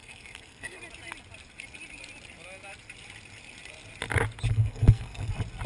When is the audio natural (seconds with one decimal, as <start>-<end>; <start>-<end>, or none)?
0.8-4.5; 5.3-5.7